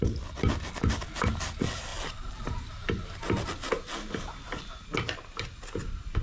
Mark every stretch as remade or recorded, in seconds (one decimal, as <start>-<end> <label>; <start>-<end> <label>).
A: 0.0-6.2 recorded